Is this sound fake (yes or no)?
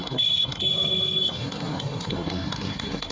yes